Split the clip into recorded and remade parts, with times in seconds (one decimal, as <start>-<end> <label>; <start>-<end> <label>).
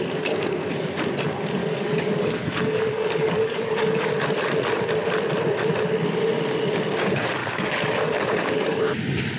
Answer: 0.0-1.6 recorded; 1.6-4.1 remade; 4.1-7.4 recorded; 7.4-8.8 remade; 8.8-9.4 recorded